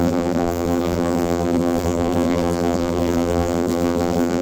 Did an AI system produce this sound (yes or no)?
yes